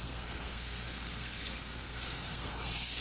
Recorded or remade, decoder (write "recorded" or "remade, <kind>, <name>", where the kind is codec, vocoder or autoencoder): remade, codec, SNAC